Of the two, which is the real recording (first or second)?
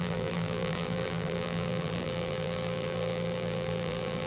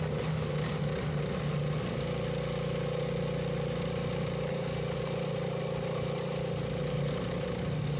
second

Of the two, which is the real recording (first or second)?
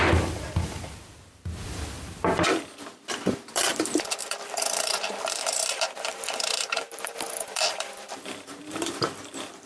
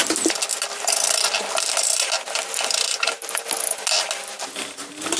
second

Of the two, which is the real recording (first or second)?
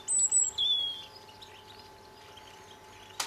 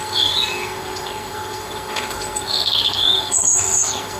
first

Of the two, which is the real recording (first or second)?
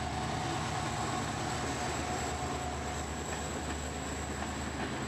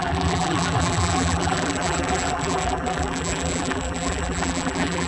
first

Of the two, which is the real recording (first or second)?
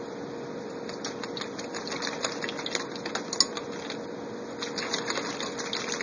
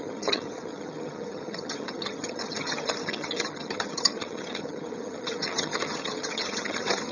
first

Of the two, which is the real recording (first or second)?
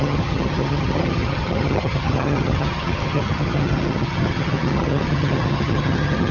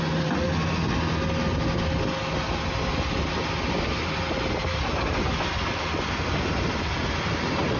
second